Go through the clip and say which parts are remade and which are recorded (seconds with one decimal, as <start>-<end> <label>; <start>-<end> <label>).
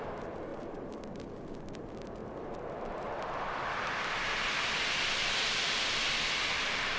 0.0-0.5 recorded; 0.5-1.0 remade; 1.0-2.2 recorded; 2.2-3.1 remade; 3.1-7.0 recorded